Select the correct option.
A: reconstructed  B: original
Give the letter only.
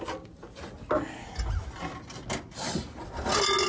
B